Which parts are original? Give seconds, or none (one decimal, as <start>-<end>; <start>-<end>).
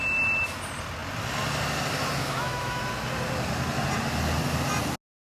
0.0-2.2; 2.8-5.3